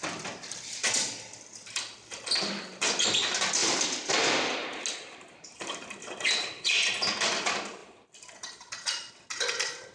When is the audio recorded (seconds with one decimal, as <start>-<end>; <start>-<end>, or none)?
0.0-9.9